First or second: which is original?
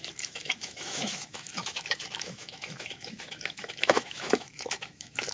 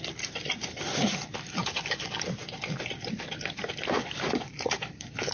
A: second